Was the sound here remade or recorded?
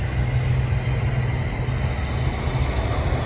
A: recorded